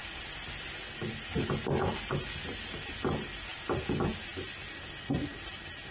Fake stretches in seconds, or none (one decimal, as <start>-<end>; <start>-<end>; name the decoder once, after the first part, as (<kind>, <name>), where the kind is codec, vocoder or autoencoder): none